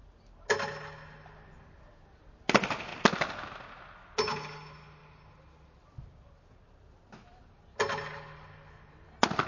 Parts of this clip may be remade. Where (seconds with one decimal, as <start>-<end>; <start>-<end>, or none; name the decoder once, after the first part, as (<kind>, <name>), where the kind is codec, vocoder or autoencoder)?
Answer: none